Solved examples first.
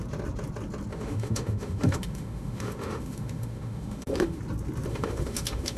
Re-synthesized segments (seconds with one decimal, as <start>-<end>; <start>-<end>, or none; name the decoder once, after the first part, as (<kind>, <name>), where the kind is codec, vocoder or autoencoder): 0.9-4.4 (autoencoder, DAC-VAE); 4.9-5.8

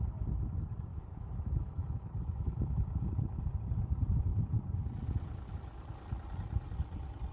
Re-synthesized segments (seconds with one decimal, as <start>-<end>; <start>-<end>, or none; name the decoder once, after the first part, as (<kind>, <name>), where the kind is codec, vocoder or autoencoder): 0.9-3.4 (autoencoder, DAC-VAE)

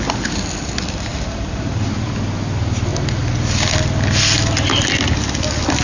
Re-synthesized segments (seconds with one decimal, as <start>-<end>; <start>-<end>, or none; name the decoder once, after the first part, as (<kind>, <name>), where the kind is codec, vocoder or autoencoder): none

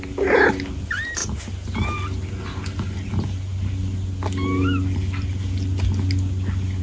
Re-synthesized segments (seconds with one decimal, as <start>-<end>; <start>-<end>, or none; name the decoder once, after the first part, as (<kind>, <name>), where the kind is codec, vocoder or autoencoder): none

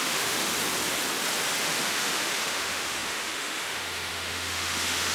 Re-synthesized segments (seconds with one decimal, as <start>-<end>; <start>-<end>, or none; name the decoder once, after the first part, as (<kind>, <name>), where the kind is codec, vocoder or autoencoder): 0.0-0.5 (autoencoder, DAC-VAE); 1.6-5.1

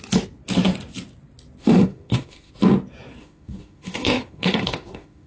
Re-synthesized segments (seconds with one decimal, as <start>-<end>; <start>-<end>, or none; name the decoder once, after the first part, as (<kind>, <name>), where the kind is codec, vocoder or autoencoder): 1.6-2.5 (autoencoder, DAC-VAE); 3.2-5.3

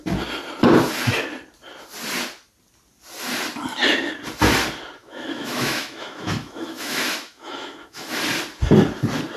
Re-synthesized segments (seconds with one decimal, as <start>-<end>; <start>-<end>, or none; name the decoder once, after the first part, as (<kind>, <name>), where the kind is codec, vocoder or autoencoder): 5.0-8.2 (autoencoder, DAC-VAE)